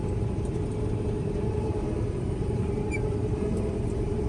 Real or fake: fake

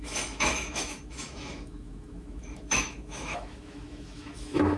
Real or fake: fake